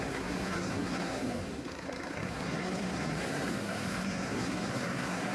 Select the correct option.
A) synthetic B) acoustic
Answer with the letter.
A